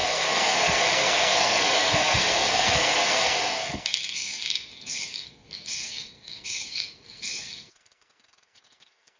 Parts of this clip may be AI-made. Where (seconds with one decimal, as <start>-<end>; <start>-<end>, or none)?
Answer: 0.0-9.2